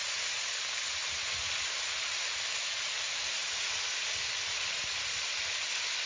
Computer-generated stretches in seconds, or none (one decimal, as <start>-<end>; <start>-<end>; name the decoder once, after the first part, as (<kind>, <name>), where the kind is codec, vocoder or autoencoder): none